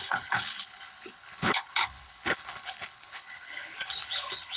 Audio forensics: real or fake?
fake